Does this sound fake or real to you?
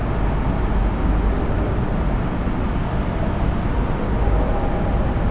real